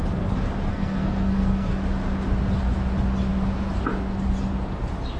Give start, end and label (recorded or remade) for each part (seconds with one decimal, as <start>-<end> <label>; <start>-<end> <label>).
0.0-0.7 recorded; 0.7-1.7 remade; 1.7-5.2 recorded